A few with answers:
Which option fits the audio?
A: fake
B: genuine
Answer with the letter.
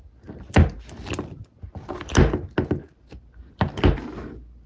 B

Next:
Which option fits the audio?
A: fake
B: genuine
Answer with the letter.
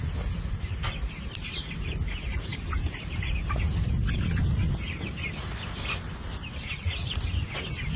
B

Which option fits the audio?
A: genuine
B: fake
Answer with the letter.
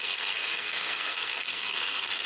B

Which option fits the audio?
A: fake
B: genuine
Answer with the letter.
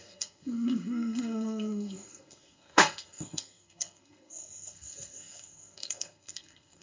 A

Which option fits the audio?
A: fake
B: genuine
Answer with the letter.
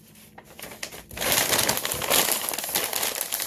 B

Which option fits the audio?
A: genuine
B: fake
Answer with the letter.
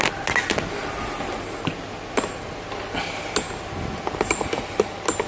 A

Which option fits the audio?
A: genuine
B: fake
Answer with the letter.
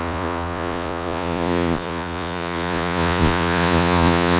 B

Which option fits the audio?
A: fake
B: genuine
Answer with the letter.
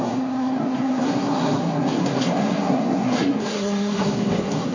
A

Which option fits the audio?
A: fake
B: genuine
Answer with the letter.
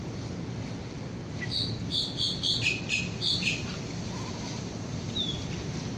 B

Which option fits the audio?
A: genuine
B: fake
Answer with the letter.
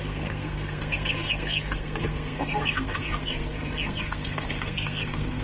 B